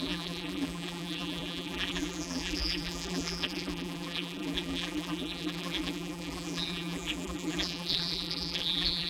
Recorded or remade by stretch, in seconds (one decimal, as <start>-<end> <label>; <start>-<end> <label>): 0.0-9.1 remade